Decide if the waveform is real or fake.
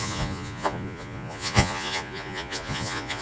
fake